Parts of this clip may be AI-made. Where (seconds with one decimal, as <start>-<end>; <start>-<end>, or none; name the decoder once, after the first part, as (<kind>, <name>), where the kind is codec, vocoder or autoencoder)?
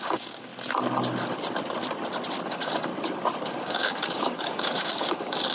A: 0.0-0.5 (codec, DAC); 2.5-2.9; 3.5-5.5